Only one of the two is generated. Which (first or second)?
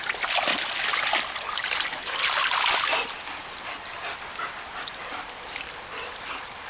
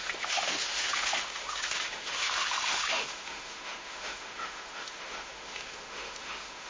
second